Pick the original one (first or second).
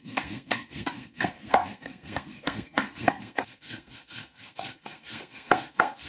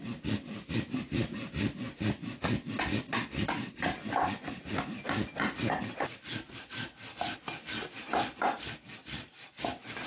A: second